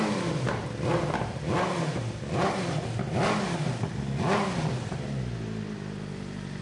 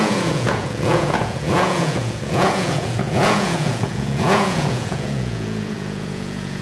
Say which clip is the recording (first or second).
first